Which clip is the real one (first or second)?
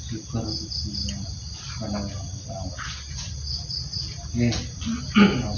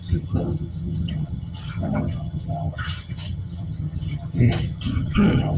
first